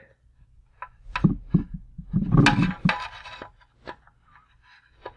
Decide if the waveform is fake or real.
real